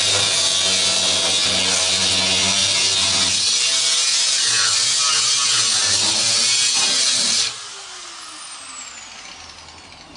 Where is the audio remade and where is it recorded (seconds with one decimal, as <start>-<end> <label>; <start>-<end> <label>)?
0.0-10.2 recorded